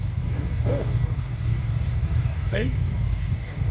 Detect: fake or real fake